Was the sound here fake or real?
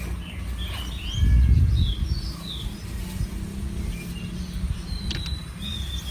real